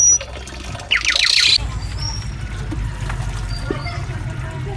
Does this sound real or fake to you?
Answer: real